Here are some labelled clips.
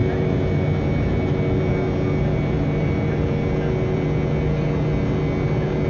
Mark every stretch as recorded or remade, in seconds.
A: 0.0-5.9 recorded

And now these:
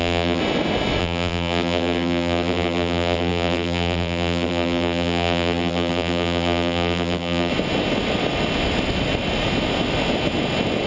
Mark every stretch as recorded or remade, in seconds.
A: 0.0-0.4 remade; 0.4-1.0 recorded; 1.0-7.5 remade; 7.5-10.9 recorded

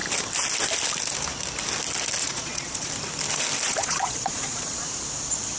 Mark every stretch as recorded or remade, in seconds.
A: 0.0-2.2 recorded; 2.2-2.9 remade; 2.9-3.8 recorded; 3.8-4.8 remade; 4.8-5.6 recorded

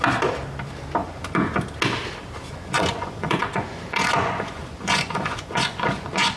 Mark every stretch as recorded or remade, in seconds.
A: 0.0-1.0 recorded; 1.0-1.5 remade; 1.5-2.5 recorded; 2.5-6.4 remade

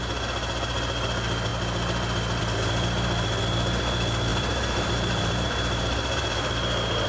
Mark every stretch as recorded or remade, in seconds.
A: 0.0-4.3 recorded; 4.3-6.5 remade; 6.5-7.1 recorded

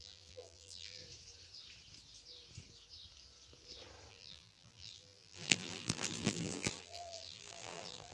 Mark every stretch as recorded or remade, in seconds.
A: 0.0-1.0 remade; 1.0-4.1 recorded; 4.1-8.1 remade

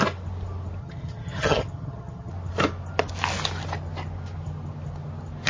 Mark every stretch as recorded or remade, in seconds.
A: 0.0-0.8 recorded; 0.8-2.3 remade; 2.3-5.5 recorded